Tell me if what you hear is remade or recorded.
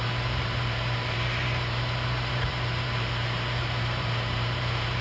remade